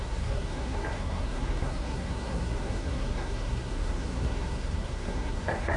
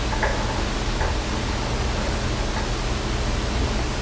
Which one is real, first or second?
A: second